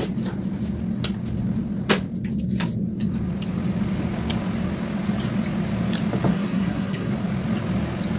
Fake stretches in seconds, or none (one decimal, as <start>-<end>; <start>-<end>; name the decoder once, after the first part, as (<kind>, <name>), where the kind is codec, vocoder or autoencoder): 6.3-7.1 (codec, SNAC)